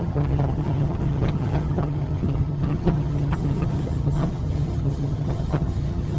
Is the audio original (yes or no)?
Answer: no